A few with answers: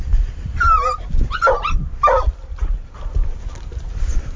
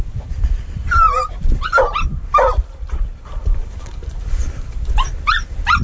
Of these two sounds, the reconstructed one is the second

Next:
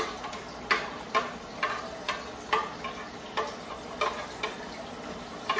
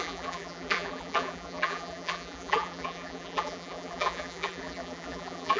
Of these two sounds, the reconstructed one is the second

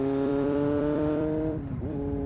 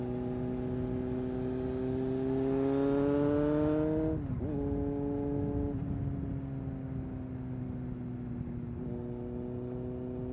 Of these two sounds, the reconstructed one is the first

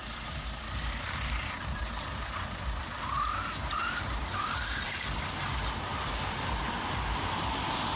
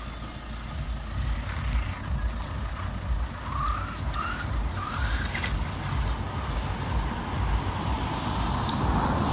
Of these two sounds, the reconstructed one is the first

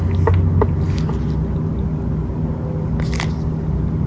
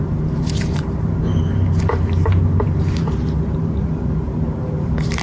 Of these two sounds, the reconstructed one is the second